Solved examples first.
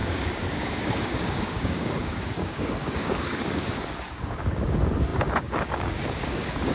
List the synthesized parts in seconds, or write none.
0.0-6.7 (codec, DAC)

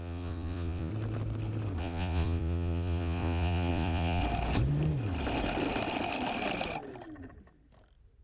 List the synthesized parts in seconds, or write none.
0.0-0.9 (vocoder, Vocos); 1.8-4.2

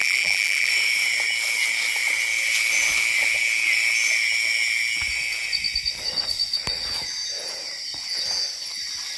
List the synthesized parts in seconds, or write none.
0.0-0.7 (vocoder, BigVGAN v2)

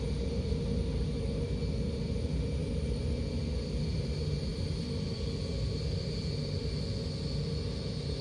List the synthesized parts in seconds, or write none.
none

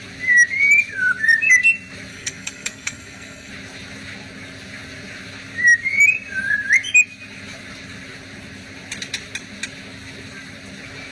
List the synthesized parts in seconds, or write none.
2.1-3.5 (codec, SNAC)